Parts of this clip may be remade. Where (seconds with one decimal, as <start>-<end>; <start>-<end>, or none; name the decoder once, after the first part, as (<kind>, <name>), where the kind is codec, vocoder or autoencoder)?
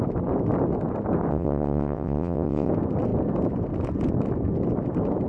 1.3-2.7 (vocoder, WaveNeXt)